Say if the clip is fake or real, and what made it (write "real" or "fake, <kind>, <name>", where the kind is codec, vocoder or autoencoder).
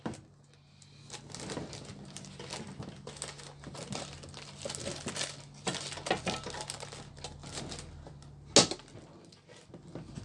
real